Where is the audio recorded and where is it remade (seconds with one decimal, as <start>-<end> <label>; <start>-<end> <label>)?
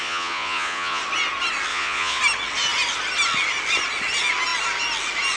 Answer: 0.0-1.0 remade; 1.0-1.7 recorded; 1.7-2.2 remade; 2.2-5.4 recorded